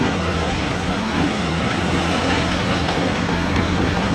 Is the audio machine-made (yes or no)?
yes